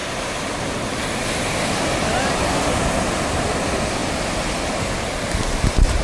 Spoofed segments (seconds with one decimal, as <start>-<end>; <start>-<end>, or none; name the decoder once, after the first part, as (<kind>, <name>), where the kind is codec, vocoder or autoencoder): none